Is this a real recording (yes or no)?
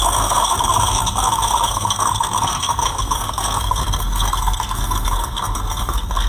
no